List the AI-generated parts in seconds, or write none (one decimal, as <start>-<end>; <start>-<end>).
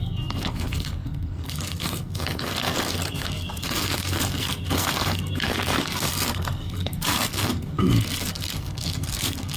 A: 0.0-9.6